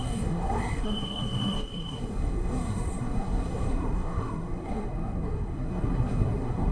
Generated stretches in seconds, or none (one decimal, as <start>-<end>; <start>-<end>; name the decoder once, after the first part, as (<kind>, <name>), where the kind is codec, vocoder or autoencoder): 0.0-6.7 (codec, SNAC)